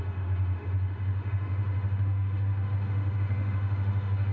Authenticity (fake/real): fake